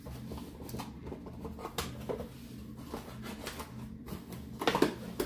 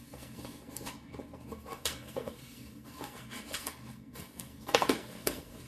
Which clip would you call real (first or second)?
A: first